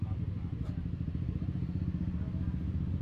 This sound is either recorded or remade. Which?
recorded